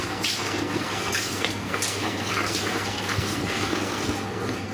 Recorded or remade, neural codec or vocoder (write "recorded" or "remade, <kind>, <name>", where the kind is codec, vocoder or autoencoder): remade, codec, SNAC